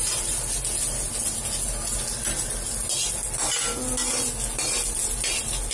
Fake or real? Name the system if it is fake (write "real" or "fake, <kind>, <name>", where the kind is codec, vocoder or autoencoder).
real